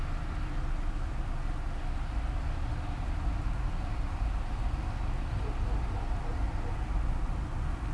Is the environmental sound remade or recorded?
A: recorded